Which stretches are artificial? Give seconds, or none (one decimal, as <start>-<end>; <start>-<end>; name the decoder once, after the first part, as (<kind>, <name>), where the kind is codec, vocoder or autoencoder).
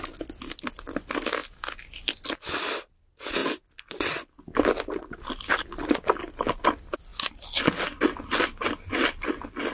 none